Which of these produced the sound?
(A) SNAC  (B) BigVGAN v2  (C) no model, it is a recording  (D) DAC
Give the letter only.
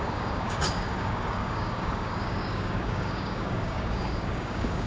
D